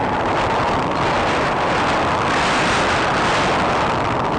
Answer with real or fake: real